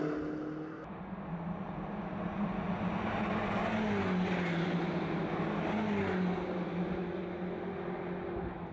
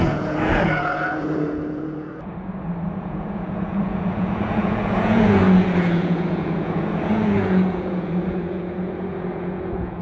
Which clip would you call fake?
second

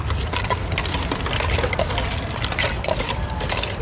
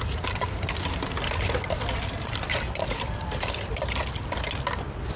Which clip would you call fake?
second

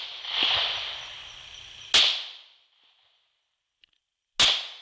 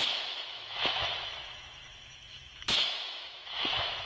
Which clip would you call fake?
second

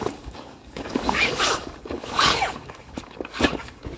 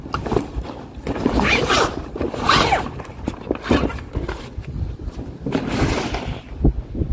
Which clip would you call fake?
first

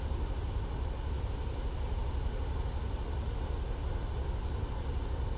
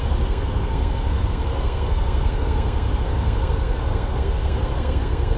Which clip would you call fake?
second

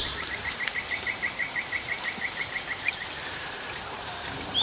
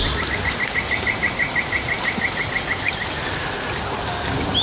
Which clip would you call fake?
first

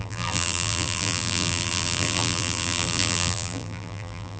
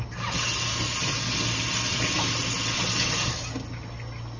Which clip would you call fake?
first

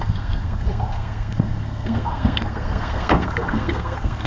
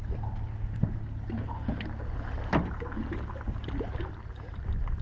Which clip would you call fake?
first